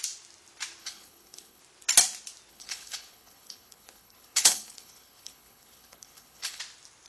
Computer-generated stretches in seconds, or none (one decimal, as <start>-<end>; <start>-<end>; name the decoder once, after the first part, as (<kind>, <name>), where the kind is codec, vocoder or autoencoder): 0.8-1.6 (codec, HILCodec); 2.5-6.6